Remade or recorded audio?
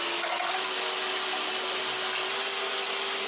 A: recorded